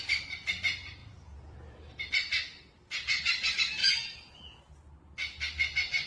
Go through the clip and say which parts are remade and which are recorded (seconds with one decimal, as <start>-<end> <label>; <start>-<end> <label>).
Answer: 0.0-1.0 recorded; 1.0-2.1 remade; 2.1-3.8 recorded; 3.8-4.6 remade; 4.6-6.1 recorded